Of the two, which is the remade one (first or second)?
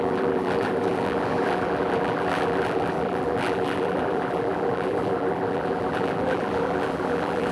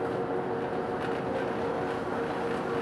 first